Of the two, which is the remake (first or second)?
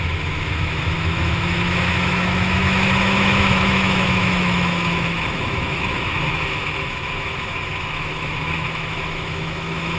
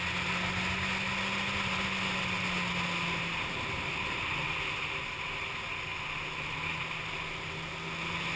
first